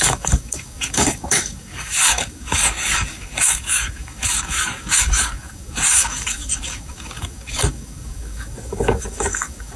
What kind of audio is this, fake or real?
fake